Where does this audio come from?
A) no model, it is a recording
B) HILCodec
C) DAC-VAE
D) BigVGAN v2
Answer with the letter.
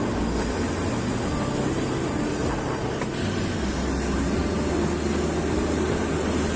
A